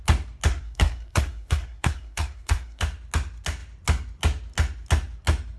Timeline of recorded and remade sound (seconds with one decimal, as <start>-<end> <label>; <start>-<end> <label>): 0.0-0.5 recorded; 0.5-2.8 remade; 2.8-5.6 recorded